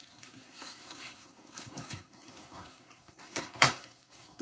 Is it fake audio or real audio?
fake